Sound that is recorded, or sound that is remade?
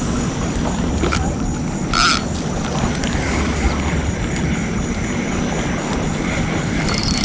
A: recorded